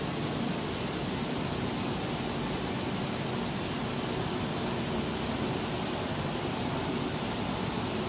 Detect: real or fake real